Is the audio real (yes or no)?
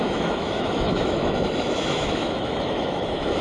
no